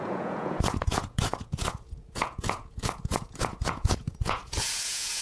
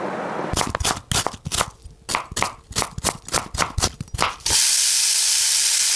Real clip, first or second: second